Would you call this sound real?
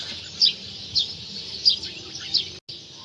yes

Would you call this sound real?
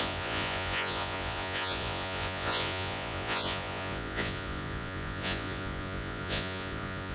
no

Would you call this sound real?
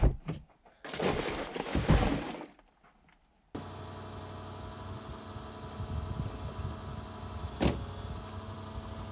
yes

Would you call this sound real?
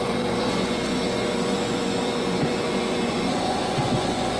no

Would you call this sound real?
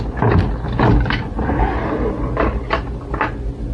yes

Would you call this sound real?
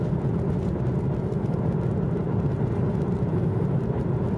yes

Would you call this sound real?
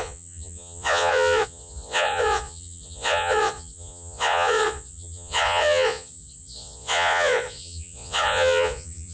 no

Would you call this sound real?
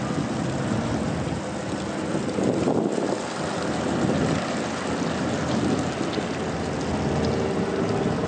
yes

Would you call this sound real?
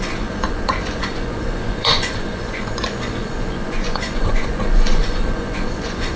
no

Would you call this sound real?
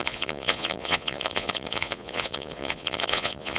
no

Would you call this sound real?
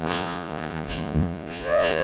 no